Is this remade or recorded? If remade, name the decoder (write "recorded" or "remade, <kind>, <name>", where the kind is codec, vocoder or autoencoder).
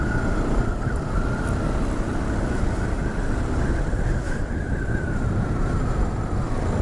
recorded